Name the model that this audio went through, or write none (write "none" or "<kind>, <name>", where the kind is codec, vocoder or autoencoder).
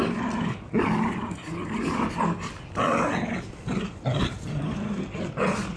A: none